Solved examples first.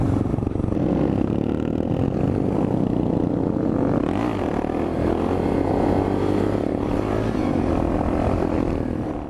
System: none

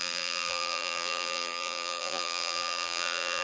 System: vocoder, BigVGAN v2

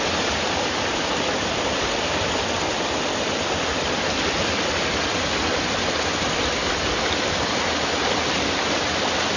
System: none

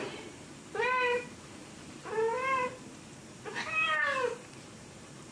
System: vocoder, BigVGAN v2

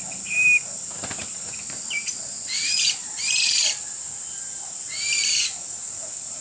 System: vocoder, BigVGAN v2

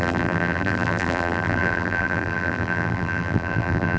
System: vocoder, BigVGAN v2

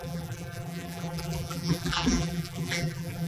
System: vocoder, BigVGAN v2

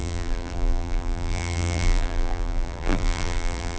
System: vocoder, BigVGAN v2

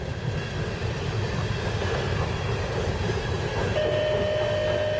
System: none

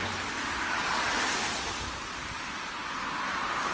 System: none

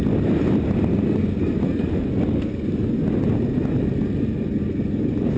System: none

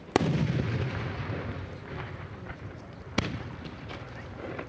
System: vocoder, BigVGAN v2